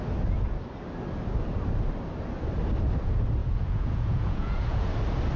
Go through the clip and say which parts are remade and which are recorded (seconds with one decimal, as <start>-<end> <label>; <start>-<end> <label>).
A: 0.0-3.4 recorded; 3.4-4.9 remade; 4.9-5.4 recorded